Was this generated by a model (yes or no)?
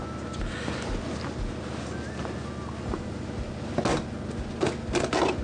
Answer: no